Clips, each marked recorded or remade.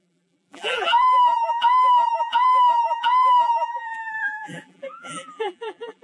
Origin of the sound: remade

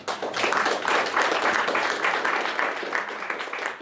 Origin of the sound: recorded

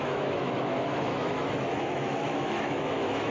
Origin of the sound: remade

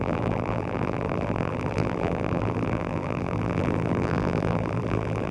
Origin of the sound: remade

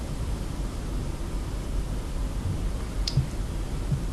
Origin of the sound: remade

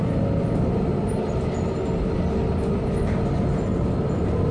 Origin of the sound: recorded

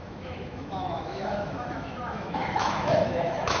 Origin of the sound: remade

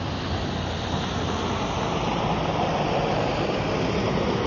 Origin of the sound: recorded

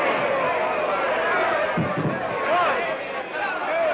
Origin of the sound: recorded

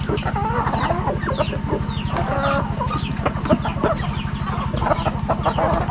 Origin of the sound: recorded